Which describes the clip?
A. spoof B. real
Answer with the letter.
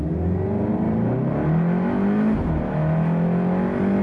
B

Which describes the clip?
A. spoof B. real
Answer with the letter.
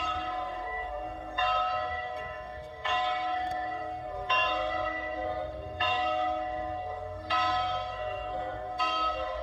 A